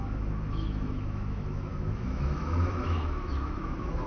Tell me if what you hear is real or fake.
fake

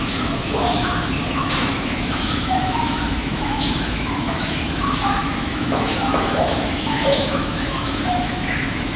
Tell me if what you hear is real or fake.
fake